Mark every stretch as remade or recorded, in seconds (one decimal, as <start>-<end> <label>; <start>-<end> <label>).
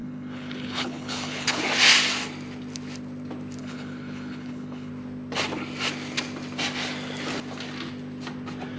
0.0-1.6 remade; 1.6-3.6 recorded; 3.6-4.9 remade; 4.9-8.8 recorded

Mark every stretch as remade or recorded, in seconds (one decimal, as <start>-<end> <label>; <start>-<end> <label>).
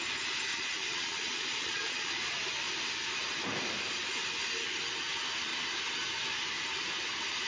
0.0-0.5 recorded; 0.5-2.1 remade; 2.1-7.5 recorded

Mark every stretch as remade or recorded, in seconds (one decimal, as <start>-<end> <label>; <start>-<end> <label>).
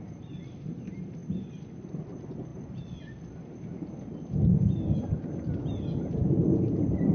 0.0-1.2 remade; 1.2-1.8 recorded; 1.8-2.5 remade; 2.5-6.4 recorded; 6.4-7.1 remade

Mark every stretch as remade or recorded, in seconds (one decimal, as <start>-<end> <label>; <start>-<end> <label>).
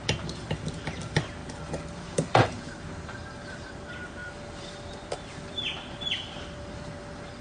0.0-7.4 remade